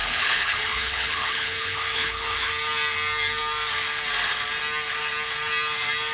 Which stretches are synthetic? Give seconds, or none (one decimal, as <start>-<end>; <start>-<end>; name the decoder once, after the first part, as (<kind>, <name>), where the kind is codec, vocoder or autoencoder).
0.0-2.5 (codec, HILCodec)